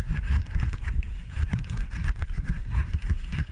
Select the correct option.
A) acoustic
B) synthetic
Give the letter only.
B